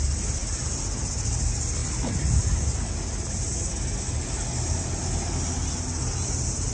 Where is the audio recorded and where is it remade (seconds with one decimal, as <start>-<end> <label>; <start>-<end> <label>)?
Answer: 0.0-6.7 recorded